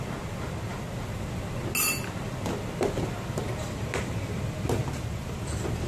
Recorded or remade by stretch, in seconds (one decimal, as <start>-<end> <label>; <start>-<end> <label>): 0.0-5.9 recorded